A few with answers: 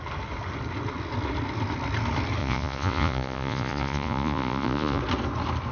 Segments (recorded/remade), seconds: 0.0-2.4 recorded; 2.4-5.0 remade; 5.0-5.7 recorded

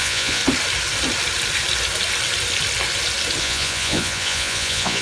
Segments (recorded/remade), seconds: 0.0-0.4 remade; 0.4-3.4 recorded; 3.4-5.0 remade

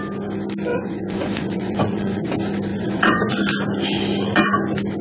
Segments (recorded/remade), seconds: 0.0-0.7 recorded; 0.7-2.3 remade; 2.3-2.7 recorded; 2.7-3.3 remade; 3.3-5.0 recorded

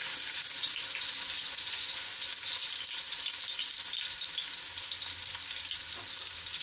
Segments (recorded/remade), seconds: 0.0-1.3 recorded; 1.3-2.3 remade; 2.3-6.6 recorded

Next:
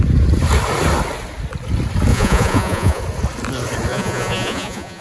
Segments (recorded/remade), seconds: 0.0-2.1 recorded; 2.1-3.0 remade; 3.0-3.9 recorded; 3.9-5.0 remade

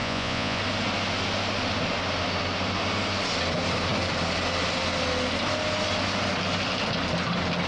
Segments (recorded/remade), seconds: 0.0-0.6 remade; 0.6-7.7 recorded